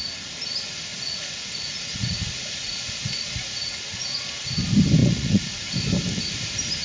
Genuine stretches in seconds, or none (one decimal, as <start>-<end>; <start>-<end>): 0.0-0.9; 4.3-5.0; 5.7-6.8